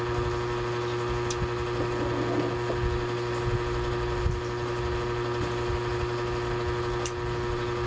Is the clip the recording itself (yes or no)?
yes